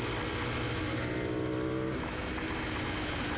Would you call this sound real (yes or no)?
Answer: yes